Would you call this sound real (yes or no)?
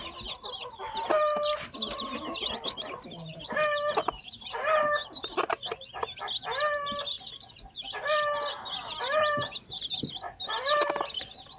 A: yes